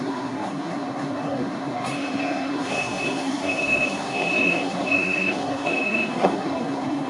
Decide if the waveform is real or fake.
fake